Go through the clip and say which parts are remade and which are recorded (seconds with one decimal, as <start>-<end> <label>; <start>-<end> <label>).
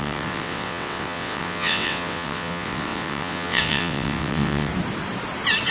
0.0-4.7 remade; 4.7-5.7 recorded